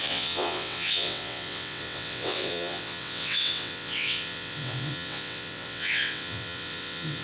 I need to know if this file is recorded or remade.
remade